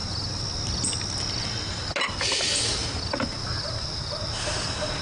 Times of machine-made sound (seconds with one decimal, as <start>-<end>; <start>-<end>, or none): none